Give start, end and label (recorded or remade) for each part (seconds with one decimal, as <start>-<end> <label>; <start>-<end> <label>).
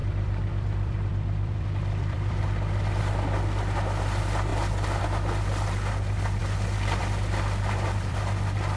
0.0-8.8 remade